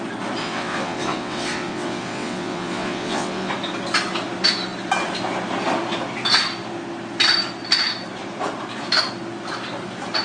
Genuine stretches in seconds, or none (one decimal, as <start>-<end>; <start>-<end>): 0.0-0.4; 3.5-10.2